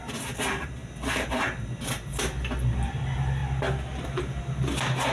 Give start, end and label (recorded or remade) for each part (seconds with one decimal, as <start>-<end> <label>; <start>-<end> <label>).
0.0-5.1 recorded